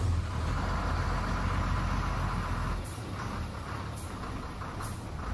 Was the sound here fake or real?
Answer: real